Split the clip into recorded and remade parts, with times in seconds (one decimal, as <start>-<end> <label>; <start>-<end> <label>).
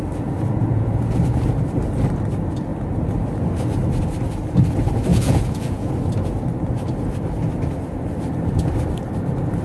0.0-0.6 recorded; 0.6-1.2 remade; 1.2-5.1 recorded; 5.1-5.9 remade; 5.9-9.6 recorded